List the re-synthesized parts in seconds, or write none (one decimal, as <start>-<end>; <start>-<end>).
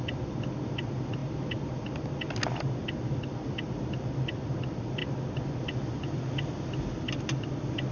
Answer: none